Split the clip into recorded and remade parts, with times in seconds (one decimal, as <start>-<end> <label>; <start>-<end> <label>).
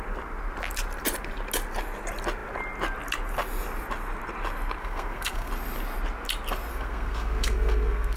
0.0-4.8 recorded; 4.8-5.5 remade; 5.5-6.7 recorded; 6.7-8.2 remade